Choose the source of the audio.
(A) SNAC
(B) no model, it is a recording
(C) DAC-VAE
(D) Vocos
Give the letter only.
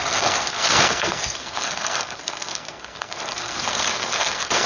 A